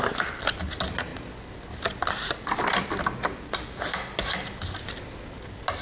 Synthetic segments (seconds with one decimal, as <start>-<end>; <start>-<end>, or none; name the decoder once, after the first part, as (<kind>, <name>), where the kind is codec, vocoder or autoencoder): none